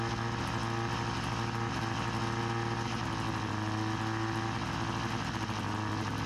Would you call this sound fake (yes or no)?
no